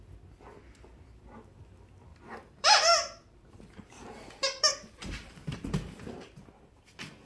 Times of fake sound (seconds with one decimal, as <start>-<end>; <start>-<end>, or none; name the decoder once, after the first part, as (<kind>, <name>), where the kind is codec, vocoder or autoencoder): 2.1-5.5 (vocoder, BigVGAN v2)